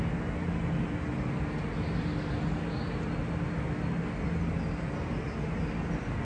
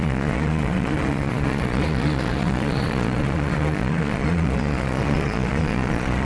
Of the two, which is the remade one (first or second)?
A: second